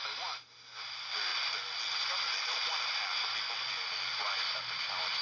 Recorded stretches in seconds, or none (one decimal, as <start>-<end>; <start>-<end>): 0.0-5.2